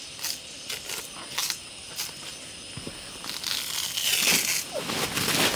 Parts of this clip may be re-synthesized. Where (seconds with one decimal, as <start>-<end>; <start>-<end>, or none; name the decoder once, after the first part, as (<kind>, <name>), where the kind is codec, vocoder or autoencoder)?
none